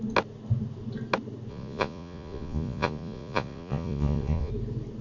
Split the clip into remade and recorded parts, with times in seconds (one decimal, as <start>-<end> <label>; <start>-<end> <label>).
0.0-1.5 recorded; 1.5-4.5 remade; 4.5-5.0 recorded